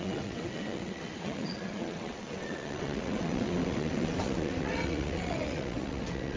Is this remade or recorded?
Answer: remade